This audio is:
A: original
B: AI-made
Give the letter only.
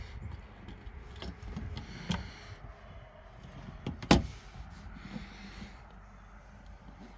A